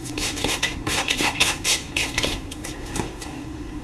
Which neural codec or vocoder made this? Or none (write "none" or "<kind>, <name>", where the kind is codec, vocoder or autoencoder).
codec, SNAC